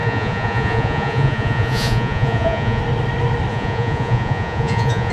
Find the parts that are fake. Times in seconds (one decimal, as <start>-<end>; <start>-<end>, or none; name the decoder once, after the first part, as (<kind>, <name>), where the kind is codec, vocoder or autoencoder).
0.0-2.8 (vocoder, Vocos); 3.5-5.1